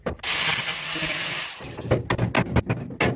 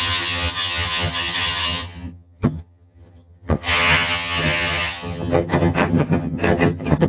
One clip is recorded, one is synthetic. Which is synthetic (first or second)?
second